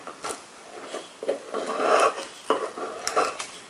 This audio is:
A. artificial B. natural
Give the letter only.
B